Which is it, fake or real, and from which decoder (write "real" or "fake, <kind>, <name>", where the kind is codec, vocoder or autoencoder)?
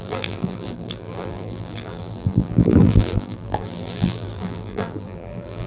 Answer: fake, vocoder, BigVGAN v2